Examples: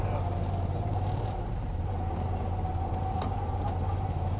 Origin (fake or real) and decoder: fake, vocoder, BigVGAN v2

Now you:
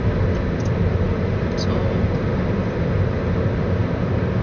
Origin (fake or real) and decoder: real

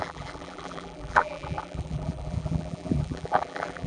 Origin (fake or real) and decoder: fake, vocoder, BigVGAN v2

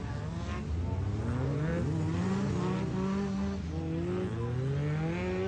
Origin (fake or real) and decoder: real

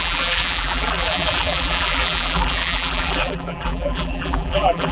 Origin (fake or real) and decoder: fake, vocoder, BigVGAN v2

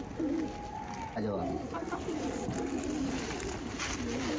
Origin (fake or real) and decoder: real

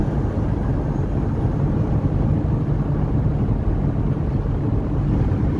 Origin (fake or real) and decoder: real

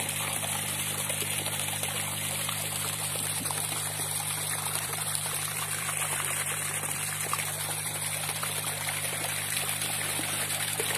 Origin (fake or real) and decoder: fake, vocoder, BigVGAN v2